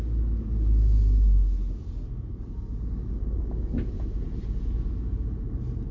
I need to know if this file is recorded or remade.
recorded